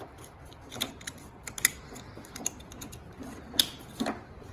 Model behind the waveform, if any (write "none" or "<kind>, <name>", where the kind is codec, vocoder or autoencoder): none